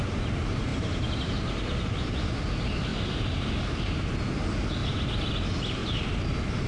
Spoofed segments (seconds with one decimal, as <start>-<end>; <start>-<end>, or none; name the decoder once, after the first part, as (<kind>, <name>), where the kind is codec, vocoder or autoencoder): 0.7-1.3 (vocoder, BigVGAN v2); 2.9-3.5; 4.8-5.3; 5.8-6.7